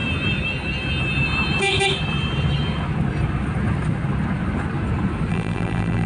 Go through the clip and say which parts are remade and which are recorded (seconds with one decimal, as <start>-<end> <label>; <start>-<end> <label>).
0.0-5.3 recorded; 5.3-6.1 remade